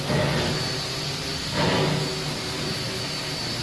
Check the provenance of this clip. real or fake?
real